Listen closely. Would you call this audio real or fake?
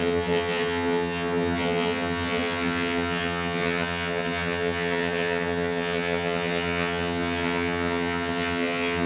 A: fake